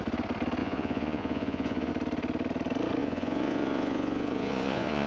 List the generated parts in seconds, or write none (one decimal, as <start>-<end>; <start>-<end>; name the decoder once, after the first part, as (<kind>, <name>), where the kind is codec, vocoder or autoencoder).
0.6-1.9 (vocoder, Vocos); 3.0-5.1